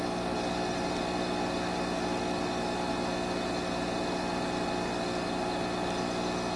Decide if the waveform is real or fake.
real